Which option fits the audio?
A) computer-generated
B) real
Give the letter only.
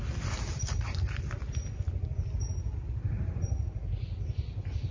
B